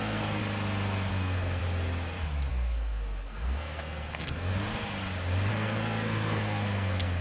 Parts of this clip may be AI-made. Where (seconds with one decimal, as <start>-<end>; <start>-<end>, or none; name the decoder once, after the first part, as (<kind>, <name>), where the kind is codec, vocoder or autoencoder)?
0.0-0.4 (codec, SNAC); 1.1-1.6; 2.5-4.5; 5.5-7.2